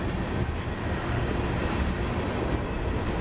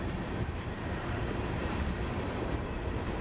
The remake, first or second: second